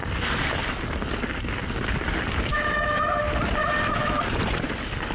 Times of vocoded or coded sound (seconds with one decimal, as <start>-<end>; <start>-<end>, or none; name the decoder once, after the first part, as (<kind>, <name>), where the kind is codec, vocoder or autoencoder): 2.5-3.2 (autoencoder, DAC-VAE); 3.6-4.2